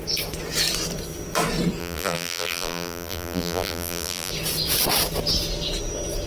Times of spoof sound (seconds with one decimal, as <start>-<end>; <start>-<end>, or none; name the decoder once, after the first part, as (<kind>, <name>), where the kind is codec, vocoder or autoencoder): 1.8-4.3 (vocoder, BigVGAN v2)